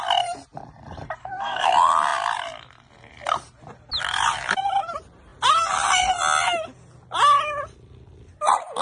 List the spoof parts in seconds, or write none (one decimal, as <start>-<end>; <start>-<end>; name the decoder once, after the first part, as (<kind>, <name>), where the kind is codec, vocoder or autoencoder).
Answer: 1.2-1.7 (codec, SNAC)